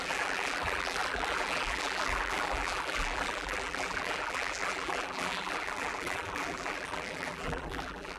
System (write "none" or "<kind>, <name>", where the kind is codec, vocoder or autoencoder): vocoder, BigVGAN v2